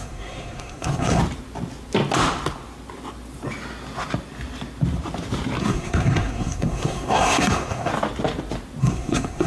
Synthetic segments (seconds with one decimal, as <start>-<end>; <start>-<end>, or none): 0.0-1.2; 5.6-7.9; 8.8-9.5